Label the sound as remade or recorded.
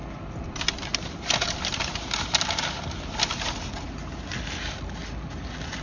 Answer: recorded